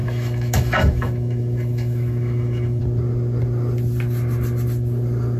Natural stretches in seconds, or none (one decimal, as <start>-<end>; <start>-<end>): 2.8-5.4